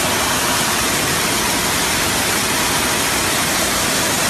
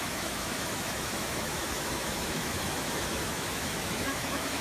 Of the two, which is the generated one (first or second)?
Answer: second